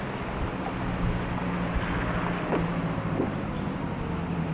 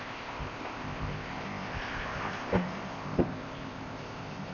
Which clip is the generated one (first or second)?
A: second